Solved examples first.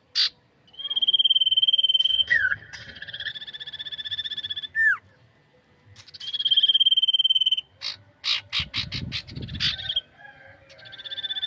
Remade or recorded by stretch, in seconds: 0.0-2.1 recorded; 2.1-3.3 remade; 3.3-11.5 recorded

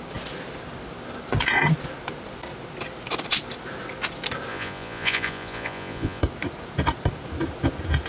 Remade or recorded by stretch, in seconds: 0.0-4.5 recorded; 4.5-6.2 remade; 6.2-8.1 recorded